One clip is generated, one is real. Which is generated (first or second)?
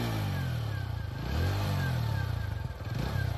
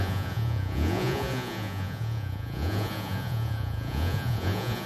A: second